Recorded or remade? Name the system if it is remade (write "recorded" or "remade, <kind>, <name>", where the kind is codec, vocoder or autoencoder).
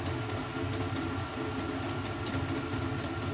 recorded